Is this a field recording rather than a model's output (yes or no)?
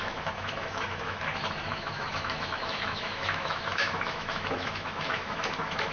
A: no